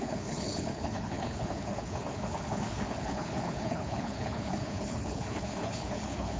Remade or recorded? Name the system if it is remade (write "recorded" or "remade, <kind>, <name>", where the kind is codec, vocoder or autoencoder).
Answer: remade, codec, HILCodec